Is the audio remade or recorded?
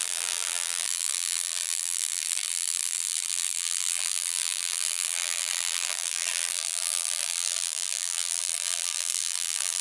remade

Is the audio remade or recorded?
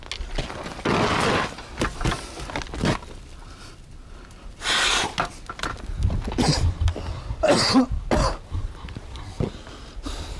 recorded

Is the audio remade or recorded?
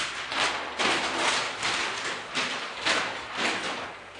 recorded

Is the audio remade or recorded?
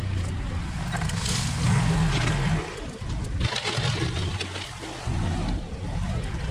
recorded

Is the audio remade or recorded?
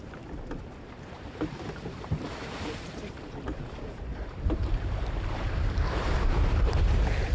remade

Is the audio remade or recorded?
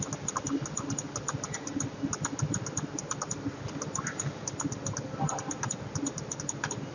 recorded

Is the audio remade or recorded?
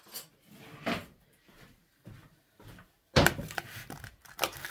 recorded